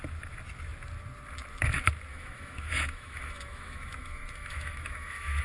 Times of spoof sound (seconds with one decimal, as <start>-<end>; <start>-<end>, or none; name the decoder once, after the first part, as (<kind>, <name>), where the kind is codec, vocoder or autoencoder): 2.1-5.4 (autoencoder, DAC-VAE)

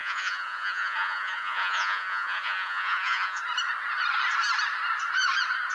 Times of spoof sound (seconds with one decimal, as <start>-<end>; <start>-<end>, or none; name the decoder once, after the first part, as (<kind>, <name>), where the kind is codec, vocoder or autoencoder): 0.0-3.4 (vocoder, Vocos)

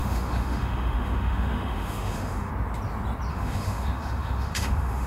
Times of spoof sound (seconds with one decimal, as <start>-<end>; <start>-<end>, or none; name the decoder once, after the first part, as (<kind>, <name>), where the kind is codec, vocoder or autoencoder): 0.0-2.5 (autoencoder, DAC-VAE); 3.3-5.1

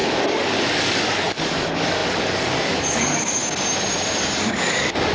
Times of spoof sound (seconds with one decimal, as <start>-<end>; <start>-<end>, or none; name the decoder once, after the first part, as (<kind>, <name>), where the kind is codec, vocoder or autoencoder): 0.0-3.4 (codec, DAC); 4.2-5.1

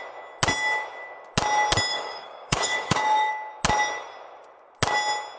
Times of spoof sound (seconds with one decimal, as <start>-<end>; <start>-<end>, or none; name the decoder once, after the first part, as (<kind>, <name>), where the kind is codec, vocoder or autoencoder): 1.9-3.3 (codec, DAC)

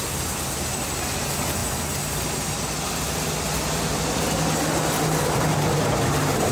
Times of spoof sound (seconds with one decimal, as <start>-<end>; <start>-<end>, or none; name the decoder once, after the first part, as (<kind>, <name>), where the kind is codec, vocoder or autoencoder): none

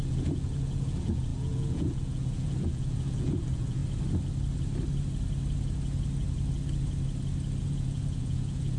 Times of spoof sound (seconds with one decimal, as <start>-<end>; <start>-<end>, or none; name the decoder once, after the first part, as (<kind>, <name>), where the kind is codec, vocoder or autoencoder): 0.0-3.8 (vocoder, Vocos); 7.6-8.8

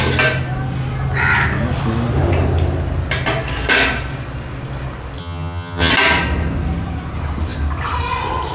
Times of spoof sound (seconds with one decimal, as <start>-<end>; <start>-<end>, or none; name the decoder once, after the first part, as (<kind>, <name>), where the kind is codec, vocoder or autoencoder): 5.2-5.9 (vocoder, HiFi-GAN)